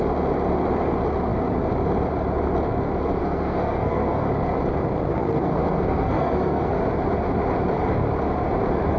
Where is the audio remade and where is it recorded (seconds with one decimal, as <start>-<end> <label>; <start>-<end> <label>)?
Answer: 0.0-3.2 recorded; 3.2-4.2 remade; 4.2-5.1 recorded; 5.1-6.8 remade; 6.8-9.0 recorded